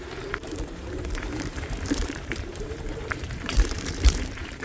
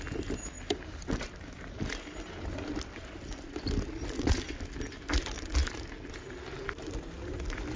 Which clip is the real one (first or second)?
second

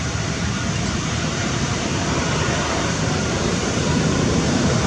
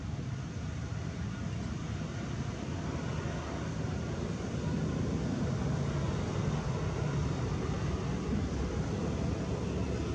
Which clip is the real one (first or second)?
second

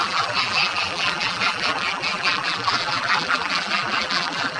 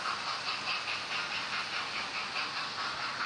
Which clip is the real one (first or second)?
second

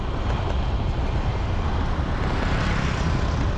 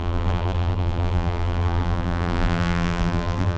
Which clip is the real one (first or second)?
first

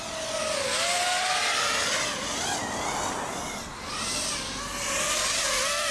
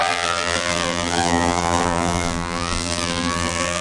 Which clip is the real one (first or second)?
first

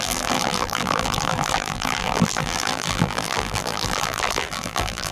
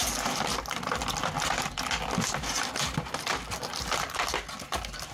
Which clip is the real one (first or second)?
second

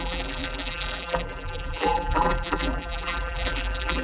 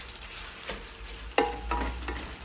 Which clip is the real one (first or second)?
second